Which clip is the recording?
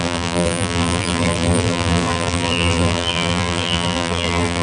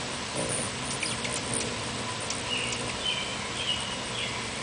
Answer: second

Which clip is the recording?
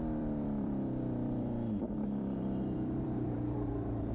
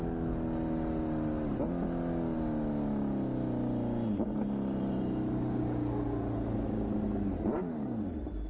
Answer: second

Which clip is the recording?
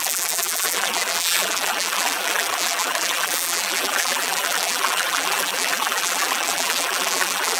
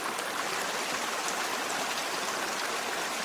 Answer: second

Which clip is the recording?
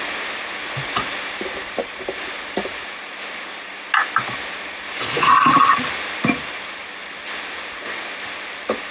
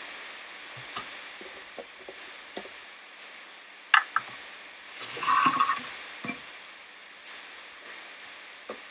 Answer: second